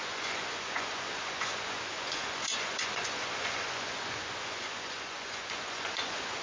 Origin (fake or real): fake